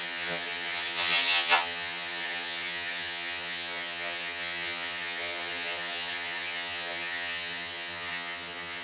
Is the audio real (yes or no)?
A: no